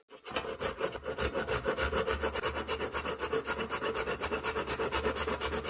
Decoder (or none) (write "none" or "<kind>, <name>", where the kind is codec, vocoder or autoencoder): none